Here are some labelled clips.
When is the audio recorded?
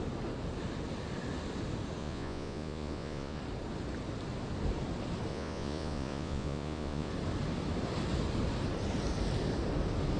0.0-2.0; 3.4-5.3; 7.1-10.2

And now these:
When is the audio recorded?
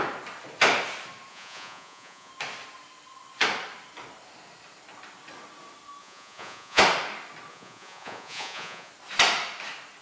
0.0-1.3; 2.3-6.0; 6.8-7.5; 8.9-10.0